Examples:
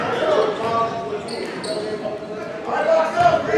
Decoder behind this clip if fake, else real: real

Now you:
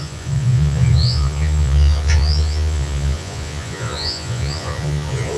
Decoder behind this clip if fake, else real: fake, vocoder, Vocos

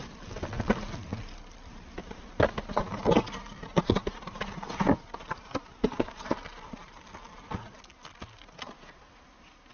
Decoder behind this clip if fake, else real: real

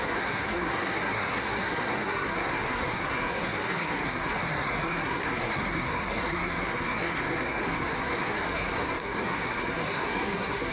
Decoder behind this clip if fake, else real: fake, codec, SNAC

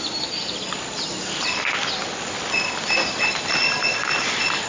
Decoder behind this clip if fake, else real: real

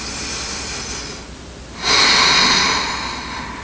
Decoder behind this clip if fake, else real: real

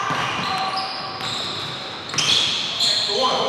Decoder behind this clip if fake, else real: real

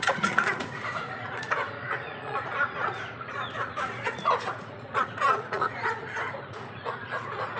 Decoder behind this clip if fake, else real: fake, vocoder, Vocos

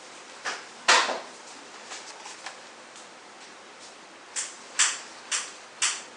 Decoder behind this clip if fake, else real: fake, vocoder, BigVGAN v2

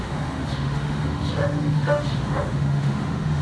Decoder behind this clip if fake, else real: fake, autoencoder, DAC-VAE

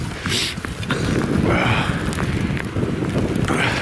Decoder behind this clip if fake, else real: real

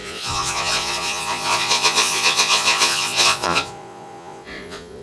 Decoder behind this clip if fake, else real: fake, vocoder, Vocos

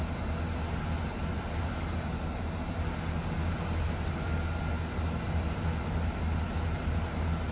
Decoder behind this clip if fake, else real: real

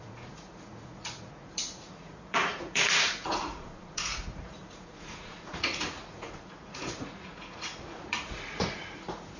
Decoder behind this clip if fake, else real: fake, vocoder, Vocos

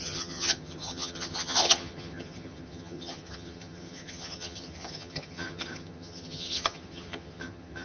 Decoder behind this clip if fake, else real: fake, vocoder, HiFi-GAN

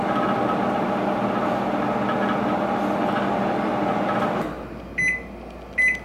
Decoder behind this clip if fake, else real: real